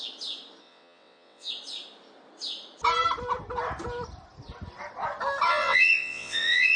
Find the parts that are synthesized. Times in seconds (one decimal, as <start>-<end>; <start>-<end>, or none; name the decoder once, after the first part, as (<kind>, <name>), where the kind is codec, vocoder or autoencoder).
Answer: 0.6-1.5 (vocoder, WaveNeXt); 5.5-6.8

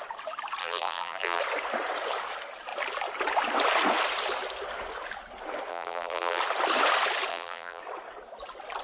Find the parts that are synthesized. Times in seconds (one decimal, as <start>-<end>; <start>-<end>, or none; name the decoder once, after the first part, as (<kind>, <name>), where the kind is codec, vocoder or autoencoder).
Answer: 0.6-1.4 (vocoder, BigVGAN v2); 5.7-6.4; 7.3-7.8

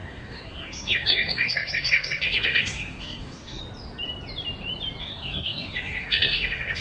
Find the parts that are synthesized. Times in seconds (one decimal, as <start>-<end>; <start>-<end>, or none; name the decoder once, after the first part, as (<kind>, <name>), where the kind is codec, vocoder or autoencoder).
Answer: 0.0-3.6 (codec, SNAC); 5.0-6.8

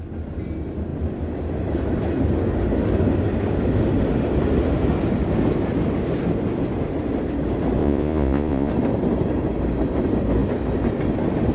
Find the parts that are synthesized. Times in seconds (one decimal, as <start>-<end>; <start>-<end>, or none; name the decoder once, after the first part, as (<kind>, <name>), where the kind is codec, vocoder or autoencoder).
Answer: 7.8-8.7 (vocoder, Vocos)

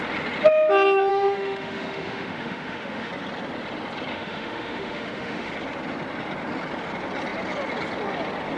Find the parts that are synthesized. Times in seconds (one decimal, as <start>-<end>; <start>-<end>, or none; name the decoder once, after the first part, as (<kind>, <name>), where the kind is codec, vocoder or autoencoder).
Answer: 1.1-3.1 (autoencoder, DAC-VAE); 4.1-5.5

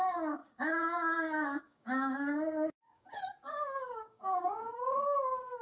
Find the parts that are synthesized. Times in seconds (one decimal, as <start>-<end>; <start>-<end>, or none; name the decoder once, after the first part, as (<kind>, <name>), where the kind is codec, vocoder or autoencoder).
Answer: 0.0-5.6 (codec, DAC)

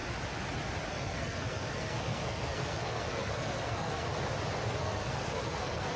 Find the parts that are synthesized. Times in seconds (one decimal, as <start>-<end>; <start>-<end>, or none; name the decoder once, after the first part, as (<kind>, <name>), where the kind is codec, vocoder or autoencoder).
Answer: 0.9-4.1 (codec, SNAC); 4.7-6.0